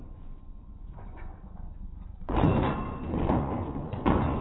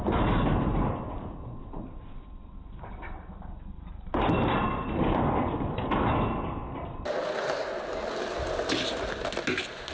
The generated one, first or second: first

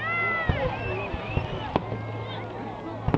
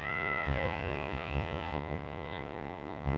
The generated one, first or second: second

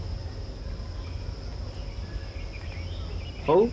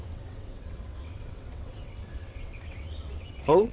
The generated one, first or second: second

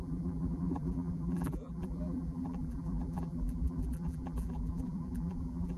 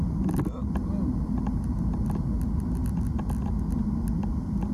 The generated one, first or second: first